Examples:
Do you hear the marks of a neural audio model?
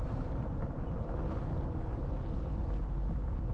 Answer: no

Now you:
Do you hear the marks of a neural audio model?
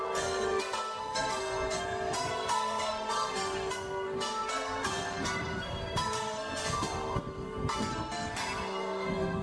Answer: yes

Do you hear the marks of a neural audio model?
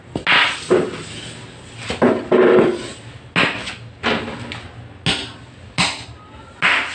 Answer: no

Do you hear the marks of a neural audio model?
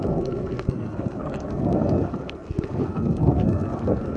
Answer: yes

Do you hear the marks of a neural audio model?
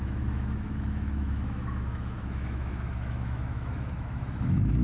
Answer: yes